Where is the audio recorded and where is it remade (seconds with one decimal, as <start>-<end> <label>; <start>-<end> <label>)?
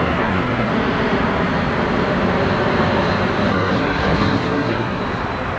0.0-0.7 remade; 0.7-3.5 recorded; 3.5-5.0 remade; 5.0-5.6 recorded